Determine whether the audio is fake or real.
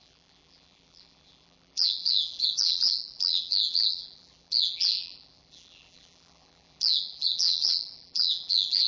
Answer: fake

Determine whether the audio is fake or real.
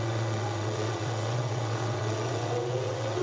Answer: fake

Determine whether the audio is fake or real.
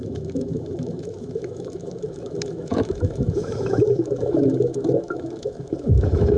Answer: fake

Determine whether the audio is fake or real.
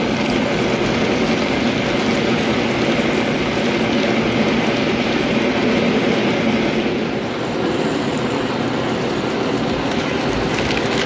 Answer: real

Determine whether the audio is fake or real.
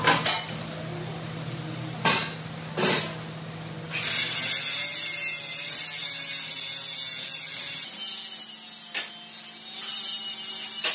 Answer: real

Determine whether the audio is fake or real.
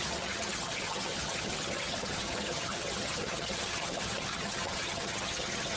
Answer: fake